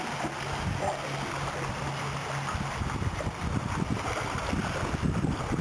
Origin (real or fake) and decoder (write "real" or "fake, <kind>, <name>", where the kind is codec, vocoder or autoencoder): real